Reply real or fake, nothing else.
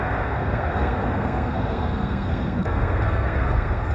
fake